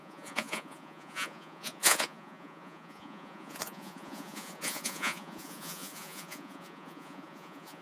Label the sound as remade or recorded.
remade